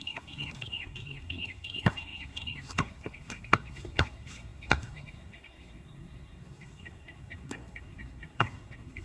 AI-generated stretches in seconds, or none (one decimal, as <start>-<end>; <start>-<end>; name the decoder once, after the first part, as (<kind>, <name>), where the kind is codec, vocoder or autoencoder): 0.0-9.0 (codec, SNAC)